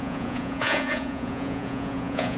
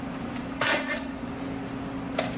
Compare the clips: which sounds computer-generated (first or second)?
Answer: first